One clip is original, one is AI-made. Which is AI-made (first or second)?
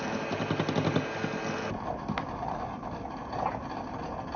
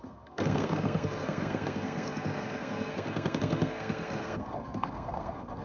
second